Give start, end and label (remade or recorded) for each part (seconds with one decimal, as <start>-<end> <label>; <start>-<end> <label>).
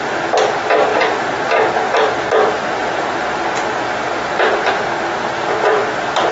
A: 0.0-6.3 recorded